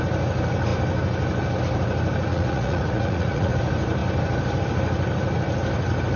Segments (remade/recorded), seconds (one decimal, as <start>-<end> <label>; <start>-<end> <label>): 0.0-2.3 recorded; 2.3-3.5 remade; 3.5-6.2 recorded